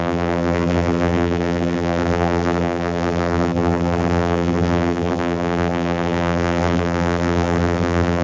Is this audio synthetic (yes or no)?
yes